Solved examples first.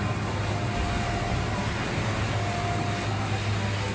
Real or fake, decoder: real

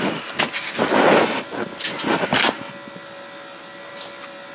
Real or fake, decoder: real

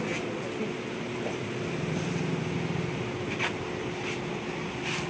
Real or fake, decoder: real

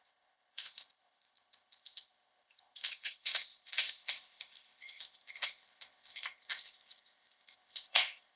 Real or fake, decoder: fake, codec, ZipCodec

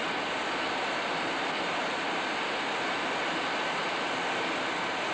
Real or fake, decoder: real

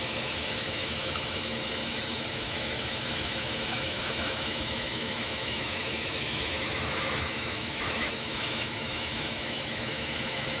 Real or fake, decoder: fake, autoencoder, DAC-VAE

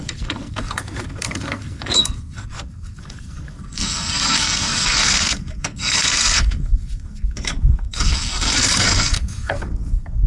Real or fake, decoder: fake, codec, SNAC